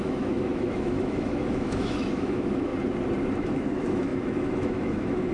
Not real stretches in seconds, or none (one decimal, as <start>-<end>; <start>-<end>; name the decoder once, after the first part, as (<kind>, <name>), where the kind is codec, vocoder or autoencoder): 0.0-2.7 (autoencoder, DAC-VAE); 3.4-5.3